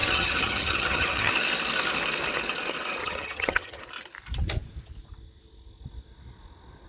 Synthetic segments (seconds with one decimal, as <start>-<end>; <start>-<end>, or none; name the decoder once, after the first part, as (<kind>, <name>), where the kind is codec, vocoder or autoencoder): 0.0-1.3 (vocoder, HiFi-GAN); 3.0-3.8